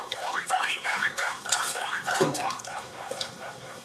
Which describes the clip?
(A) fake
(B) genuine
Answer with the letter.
A